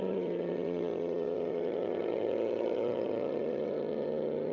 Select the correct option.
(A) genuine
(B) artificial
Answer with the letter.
B